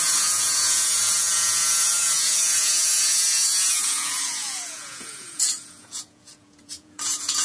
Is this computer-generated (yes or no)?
yes